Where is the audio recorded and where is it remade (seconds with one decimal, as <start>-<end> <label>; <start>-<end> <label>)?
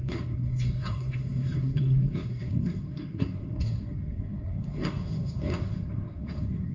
0.0-6.7 remade